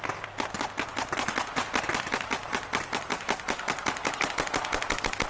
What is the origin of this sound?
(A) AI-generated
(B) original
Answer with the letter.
B